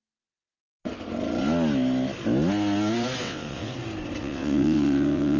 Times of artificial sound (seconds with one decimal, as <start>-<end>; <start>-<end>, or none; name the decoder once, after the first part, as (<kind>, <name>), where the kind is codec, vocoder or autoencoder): 0.0-0.6 (vocoder, WaveNeXt); 3.2-3.7; 4.2-5.4